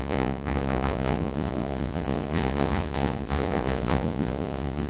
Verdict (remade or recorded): remade